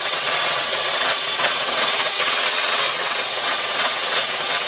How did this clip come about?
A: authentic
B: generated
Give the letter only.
B